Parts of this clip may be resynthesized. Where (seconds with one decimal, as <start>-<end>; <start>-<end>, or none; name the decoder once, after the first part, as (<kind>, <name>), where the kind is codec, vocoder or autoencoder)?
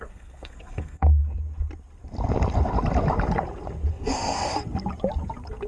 0.0-1.2 (codec, SNAC); 3.9-4.5